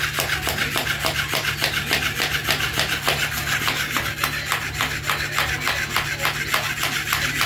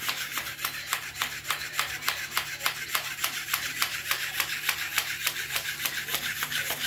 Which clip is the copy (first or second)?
second